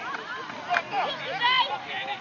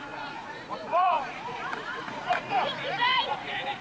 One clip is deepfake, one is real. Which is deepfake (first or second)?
second